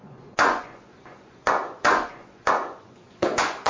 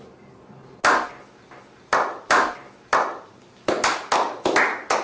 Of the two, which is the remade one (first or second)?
first